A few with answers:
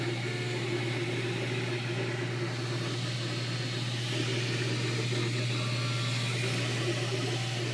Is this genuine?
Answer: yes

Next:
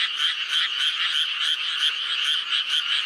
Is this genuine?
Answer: yes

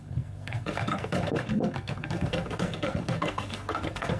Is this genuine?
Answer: no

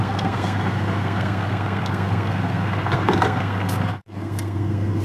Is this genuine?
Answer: no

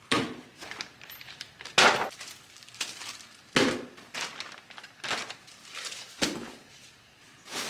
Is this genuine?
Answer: yes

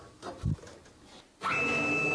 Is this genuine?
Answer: yes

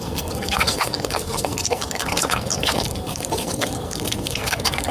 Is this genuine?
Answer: no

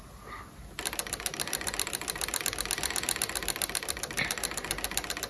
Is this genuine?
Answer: yes